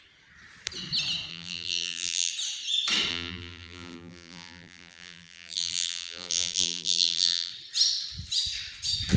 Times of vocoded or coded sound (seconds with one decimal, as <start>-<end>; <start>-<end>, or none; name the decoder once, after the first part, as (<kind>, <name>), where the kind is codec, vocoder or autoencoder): 1.3-2.3 (vocoder, BigVGAN v2); 3.1-7.5